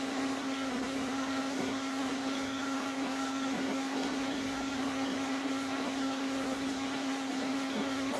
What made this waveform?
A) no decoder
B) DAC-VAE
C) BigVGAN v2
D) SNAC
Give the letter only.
D